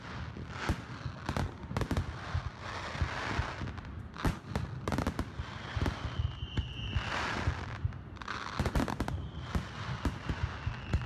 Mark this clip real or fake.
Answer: real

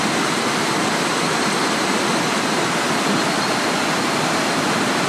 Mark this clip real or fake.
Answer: fake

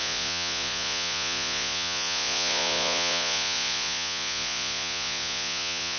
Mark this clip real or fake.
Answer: fake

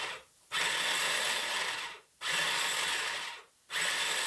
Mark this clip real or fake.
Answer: real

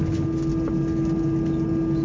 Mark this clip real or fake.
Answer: real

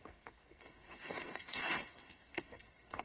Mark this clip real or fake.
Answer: fake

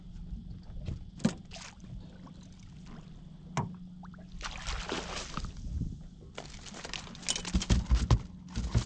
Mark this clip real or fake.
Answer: real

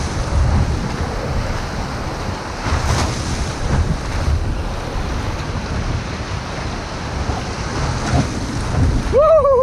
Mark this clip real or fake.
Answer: real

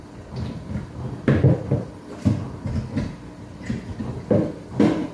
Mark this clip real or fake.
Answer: real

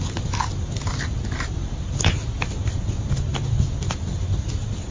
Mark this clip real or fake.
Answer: real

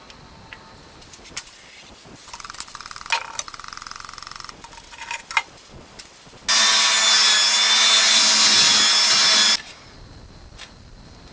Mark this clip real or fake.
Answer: real